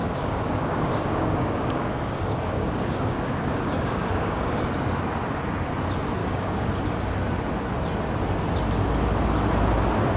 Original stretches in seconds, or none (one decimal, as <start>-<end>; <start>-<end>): 4.6-6.2; 6.8-10.2